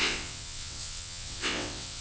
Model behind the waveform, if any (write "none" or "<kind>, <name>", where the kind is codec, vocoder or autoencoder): vocoder, WaveNeXt